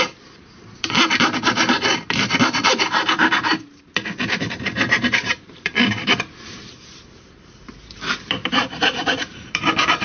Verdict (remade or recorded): remade